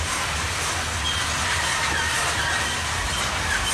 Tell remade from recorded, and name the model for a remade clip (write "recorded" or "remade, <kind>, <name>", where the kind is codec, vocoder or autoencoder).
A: recorded